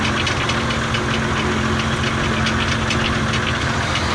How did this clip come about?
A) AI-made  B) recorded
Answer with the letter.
B